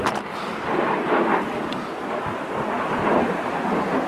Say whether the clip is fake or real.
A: real